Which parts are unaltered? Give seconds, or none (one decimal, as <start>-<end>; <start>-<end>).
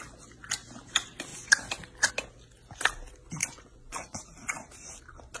0.0-3.4; 4.2-5.4